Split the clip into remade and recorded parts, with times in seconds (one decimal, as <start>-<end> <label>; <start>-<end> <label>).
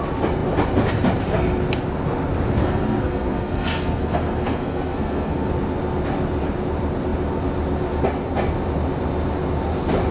0.0-2.6 recorded; 2.6-5.5 remade; 5.5-10.1 recorded